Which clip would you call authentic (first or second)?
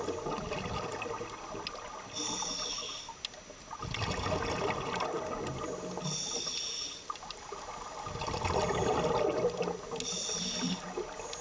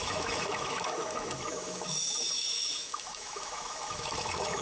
first